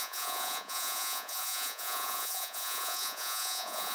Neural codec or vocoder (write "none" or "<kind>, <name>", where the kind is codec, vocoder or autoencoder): vocoder, Vocos